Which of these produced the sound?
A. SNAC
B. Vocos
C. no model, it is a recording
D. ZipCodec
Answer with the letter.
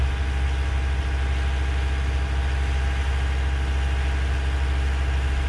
C